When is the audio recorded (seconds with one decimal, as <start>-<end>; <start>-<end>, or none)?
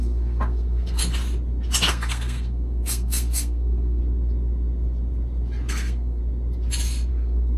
1.0-1.9; 4.0-5.7; 6.2-7.1